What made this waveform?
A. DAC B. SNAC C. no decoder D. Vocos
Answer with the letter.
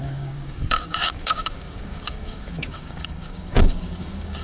A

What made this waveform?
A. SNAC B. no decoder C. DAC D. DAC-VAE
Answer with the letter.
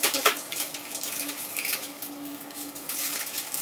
C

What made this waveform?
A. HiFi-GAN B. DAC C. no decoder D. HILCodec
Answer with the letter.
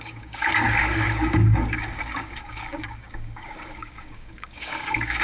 B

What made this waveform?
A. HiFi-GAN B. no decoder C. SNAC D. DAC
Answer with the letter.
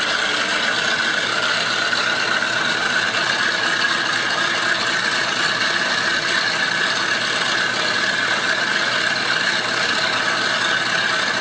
B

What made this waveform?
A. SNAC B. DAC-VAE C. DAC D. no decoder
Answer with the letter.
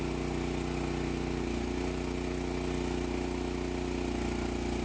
D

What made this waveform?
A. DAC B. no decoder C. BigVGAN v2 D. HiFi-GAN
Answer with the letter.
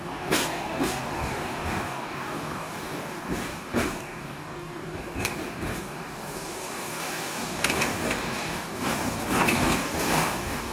A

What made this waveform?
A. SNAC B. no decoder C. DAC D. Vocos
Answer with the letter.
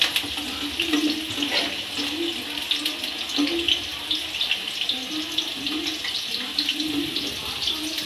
B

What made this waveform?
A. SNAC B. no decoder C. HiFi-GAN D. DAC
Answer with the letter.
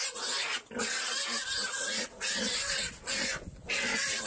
B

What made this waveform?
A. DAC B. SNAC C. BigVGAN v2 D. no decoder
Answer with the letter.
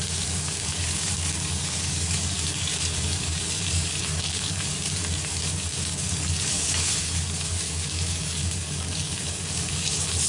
A